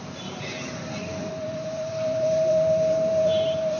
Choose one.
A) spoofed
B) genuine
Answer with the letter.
A